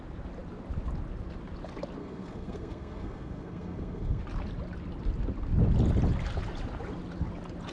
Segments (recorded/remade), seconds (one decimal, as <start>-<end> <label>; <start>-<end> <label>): 0.0-2.0 recorded; 2.0-4.2 remade; 4.2-7.7 recorded